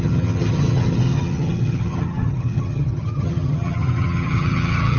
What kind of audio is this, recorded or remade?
remade